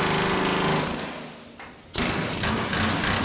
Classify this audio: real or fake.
real